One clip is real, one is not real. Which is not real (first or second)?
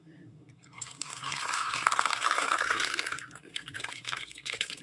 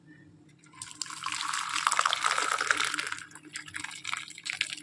first